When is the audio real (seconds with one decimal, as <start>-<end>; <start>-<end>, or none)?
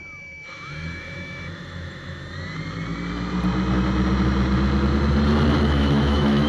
2.2-5.6